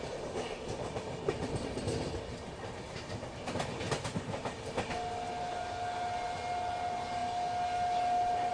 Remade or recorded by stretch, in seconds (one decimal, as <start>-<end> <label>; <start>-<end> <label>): 0.0-8.5 recorded